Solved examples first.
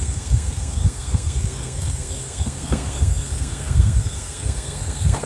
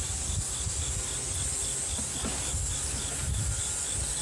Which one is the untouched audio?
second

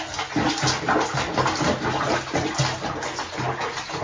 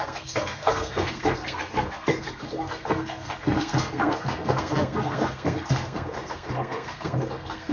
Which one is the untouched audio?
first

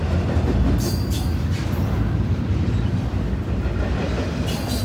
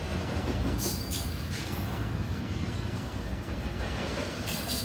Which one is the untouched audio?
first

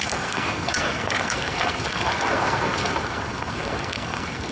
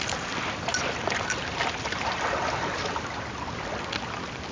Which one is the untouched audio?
second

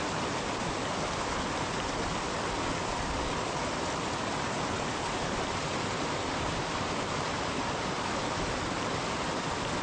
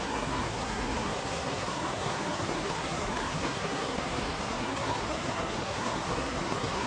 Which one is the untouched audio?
first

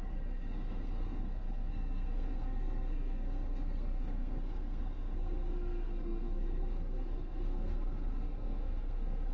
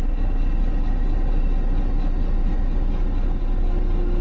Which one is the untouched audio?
second